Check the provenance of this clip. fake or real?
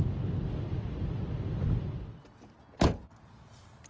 real